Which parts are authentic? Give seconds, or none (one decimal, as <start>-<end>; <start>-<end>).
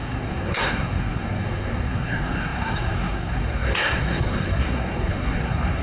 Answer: none